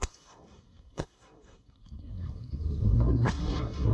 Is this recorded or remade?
remade